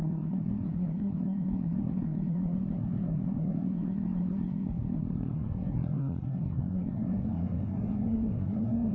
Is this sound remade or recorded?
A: remade